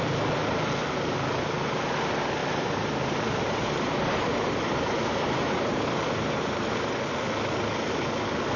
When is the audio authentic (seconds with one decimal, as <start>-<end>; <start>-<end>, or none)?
0.0-2.4; 6.8-8.6